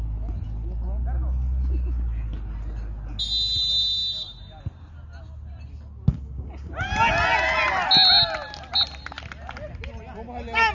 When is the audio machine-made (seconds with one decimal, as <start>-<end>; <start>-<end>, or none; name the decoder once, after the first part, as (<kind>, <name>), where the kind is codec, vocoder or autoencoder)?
6.1-6.7 (codec, DAC)